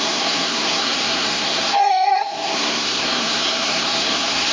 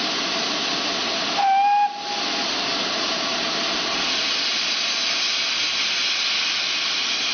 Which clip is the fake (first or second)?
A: first